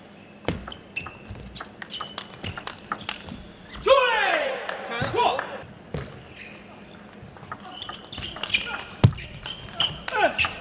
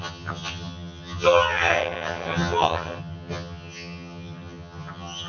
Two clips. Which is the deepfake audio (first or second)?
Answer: second